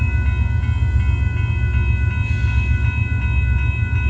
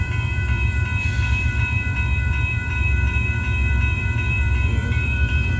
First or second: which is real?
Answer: first